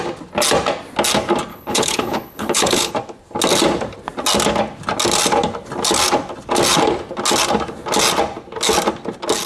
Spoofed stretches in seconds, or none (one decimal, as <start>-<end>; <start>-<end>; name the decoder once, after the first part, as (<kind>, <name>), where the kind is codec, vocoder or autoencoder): 1.5-2.9 (codec, HILCodec)